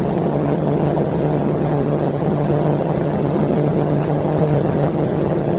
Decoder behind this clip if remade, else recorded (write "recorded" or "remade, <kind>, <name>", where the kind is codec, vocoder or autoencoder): remade, vocoder, HiFi-GAN